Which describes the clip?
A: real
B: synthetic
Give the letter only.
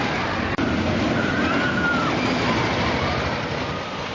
A